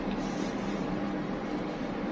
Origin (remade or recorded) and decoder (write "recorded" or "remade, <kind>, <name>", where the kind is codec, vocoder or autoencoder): recorded